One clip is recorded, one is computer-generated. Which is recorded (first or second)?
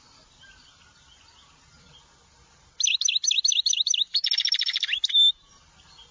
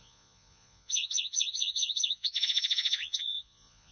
first